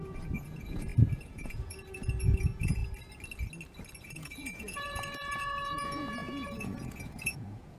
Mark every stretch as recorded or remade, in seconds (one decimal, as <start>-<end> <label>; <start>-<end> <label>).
0.0-2.8 remade; 2.8-4.0 recorded; 4.0-7.8 remade